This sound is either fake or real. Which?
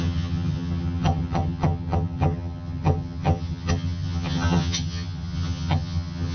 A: fake